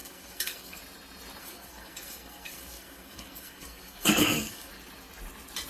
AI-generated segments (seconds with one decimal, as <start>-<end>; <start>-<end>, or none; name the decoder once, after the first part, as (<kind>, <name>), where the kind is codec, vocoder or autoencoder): 0.0-0.8 (codec, SNAC); 1.4-4.7